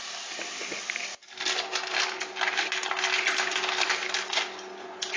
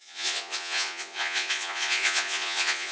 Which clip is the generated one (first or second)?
second